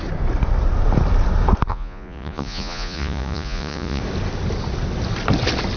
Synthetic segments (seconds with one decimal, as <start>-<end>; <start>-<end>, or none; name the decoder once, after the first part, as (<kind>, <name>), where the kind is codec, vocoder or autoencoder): 1.7-4.0 (vocoder, Vocos)